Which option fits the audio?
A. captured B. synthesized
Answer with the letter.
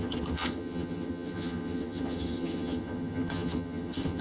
B